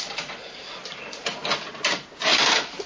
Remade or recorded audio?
recorded